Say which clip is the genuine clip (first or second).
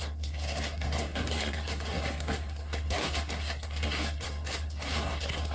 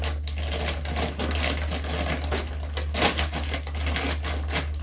second